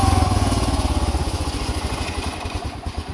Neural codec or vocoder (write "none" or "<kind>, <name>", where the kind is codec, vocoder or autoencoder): vocoder, Vocos